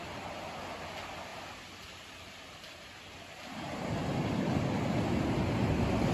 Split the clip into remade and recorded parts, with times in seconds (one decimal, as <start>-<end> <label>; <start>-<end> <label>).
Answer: 0.0-6.1 recorded